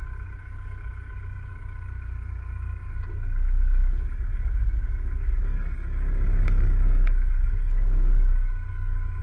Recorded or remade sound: remade